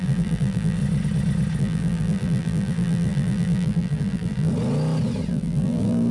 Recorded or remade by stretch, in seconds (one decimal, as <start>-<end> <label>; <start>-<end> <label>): 0.0-0.8 remade; 0.8-1.6 recorded; 1.6-4.5 remade; 4.5-5.3 recorded; 5.3-6.1 remade